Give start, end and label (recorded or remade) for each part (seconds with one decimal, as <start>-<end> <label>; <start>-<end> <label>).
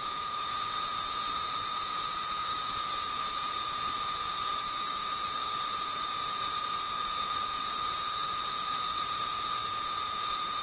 0.0-10.6 remade